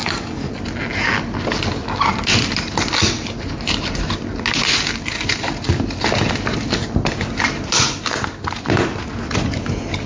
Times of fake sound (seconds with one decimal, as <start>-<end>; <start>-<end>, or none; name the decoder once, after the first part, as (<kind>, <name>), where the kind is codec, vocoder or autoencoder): 0.0-0.5 (codec, DAC)